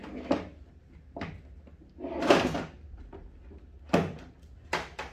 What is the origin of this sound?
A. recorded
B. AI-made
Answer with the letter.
A